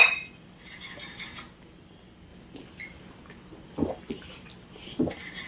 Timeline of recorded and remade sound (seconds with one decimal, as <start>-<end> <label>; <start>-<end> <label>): 0.0-5.5 recorded